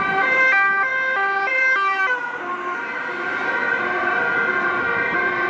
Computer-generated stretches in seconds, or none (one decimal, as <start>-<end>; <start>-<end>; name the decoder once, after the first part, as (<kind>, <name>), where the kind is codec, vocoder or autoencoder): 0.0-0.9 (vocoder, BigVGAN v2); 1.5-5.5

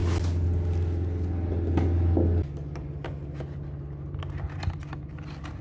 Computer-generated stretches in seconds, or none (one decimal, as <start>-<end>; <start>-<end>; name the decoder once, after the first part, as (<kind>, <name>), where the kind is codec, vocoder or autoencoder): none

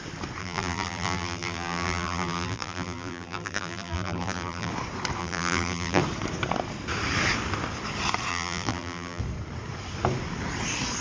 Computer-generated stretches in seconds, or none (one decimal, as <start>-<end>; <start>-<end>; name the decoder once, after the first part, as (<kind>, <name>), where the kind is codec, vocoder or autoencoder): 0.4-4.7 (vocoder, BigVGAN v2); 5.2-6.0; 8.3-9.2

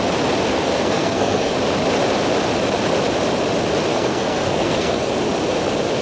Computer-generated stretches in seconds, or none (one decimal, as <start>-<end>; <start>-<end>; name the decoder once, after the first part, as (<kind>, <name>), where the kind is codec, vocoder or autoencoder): 0.5-1.5 (codec, SNAC); 3.9-5.1